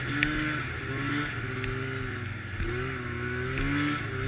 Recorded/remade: recorded